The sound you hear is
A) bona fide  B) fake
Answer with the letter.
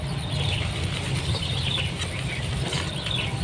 A